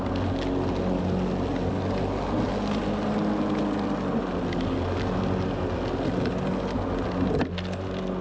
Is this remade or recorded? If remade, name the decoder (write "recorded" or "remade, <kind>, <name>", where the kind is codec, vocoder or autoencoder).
recorded